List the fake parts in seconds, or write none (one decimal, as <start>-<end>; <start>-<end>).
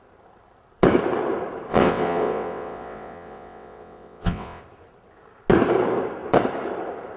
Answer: 1.7-4.6